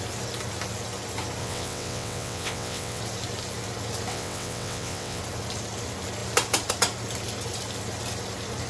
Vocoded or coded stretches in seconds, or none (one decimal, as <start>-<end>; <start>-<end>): 1.4-3.0; 4.1-5.2